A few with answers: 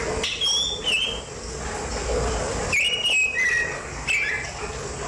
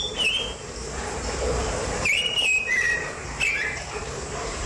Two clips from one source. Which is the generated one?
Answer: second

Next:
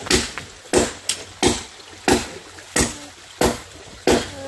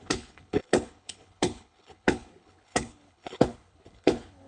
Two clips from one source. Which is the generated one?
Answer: second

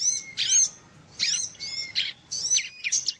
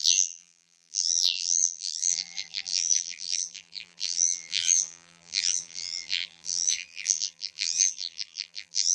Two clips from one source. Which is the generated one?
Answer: second